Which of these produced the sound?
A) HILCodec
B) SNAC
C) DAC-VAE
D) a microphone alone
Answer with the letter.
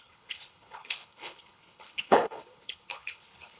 A